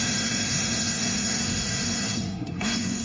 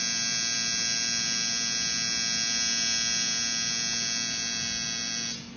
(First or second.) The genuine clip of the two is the second